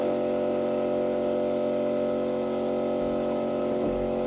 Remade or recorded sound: recorded